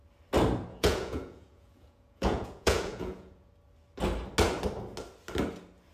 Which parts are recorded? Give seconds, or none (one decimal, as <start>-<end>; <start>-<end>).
0.0-0.7; 3.5-5.9